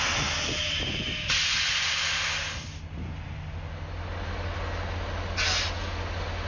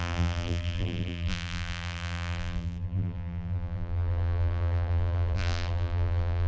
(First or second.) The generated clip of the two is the second